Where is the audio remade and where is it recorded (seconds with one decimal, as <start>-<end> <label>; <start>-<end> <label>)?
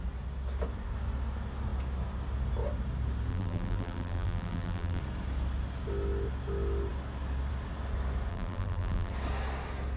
0.0-3.3 recorded; 3.3-5.0 remade; 5.0-8.3 recorded; 8.3-9.1 remade; 9.1-10.0 recorded